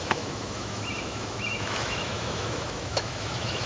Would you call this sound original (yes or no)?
no